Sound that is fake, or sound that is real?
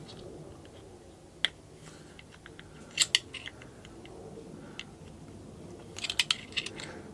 real